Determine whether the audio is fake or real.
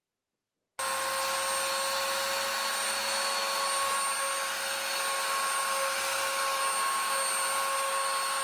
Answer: real